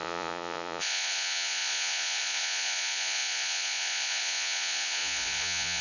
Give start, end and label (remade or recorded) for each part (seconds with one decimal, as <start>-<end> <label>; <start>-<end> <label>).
0.0-5.8 remade